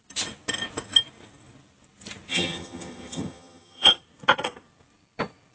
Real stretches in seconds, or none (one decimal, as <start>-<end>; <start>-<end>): 0.0-2.3; 4.0-5.5